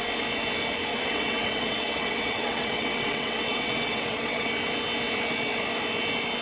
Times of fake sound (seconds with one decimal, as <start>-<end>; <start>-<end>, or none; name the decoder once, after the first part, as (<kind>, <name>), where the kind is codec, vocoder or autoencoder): 0.9-4.5 (vocoder, WaveNeXt)